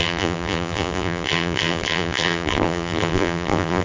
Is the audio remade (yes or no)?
yes